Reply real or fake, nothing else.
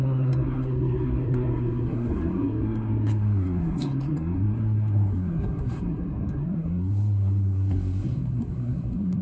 fake